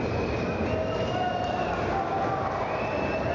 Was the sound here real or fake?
real